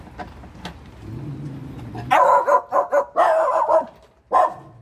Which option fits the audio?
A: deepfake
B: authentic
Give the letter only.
B